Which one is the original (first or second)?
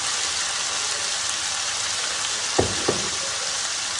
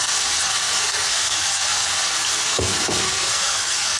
first